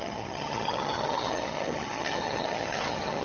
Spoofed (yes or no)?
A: yes